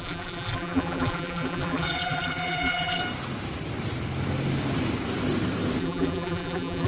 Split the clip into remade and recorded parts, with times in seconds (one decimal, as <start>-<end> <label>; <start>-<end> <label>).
0.0-3.0 remade; 3.0-5.8 recorded; 5.8-6.9 remade